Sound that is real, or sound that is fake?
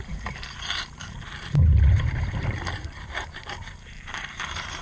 fake